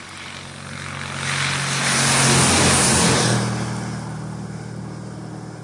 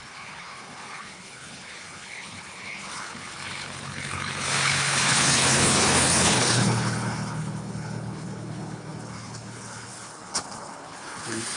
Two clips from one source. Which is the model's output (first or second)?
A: second